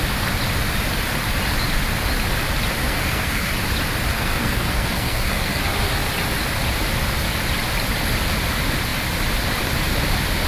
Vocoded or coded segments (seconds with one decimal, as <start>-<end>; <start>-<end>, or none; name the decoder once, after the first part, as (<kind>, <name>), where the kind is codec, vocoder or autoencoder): 2.8-3.5 (codec, SNAC); 4.1-5.6